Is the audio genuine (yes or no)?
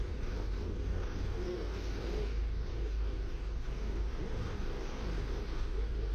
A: no